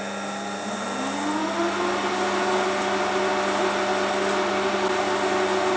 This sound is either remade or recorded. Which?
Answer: recorded